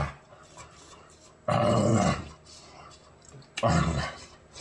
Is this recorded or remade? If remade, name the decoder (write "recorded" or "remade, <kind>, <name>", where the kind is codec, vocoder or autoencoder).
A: recorded